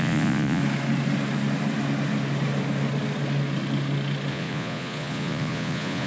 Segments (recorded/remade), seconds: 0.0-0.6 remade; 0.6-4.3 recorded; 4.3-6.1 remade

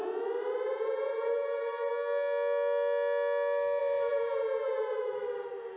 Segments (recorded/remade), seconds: 0.0-0.7 recorded; 0.7-1.9 remade; 1.9-3.8 recorded; 3.8-5.2 remade; 5.2-5.8 recorded